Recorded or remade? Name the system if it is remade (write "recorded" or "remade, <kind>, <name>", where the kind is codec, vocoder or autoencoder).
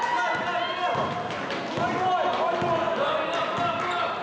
recorded